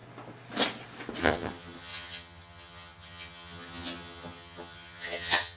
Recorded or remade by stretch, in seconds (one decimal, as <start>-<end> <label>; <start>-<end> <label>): 0.0-1.2 recorded; 1.2-5.6 remade